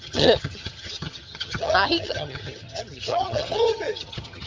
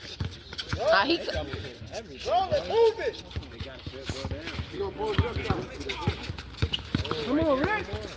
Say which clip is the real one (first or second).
second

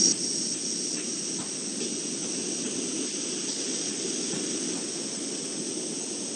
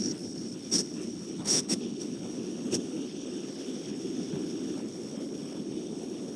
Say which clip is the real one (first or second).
first